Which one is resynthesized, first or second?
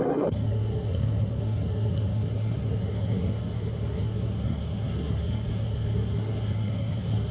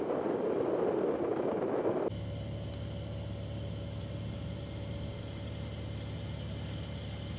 first